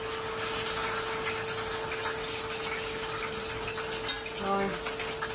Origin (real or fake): real